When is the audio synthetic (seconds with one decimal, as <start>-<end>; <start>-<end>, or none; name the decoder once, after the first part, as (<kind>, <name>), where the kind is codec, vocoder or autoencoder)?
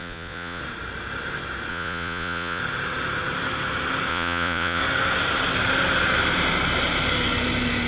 0.0-0.6 (vocoder, Vocos); 1.7-2.6; 4.1-4.8